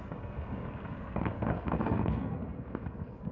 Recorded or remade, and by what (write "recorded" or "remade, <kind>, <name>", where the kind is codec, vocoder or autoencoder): remade, codec, SNAC